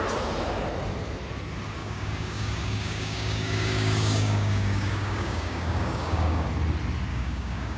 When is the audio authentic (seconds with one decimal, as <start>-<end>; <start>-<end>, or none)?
0.0-1.8; 6.5-7.1